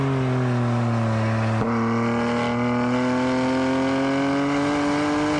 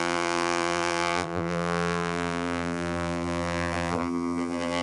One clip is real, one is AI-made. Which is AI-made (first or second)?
second